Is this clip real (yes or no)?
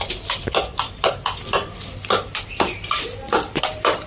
yes